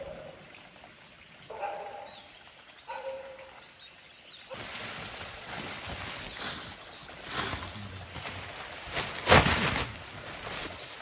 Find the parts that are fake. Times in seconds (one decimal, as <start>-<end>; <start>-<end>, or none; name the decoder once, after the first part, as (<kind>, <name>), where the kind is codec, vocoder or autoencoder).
4.7-5.6 (vocoder, Vocos)